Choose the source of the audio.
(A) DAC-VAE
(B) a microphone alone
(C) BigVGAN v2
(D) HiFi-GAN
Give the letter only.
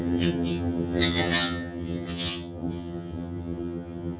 D